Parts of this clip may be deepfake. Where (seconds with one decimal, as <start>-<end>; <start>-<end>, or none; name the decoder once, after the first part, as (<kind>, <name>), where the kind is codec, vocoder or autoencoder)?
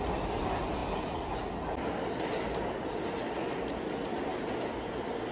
none